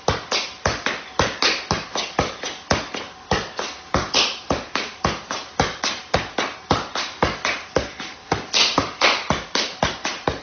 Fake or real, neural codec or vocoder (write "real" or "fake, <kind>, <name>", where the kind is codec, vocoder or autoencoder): real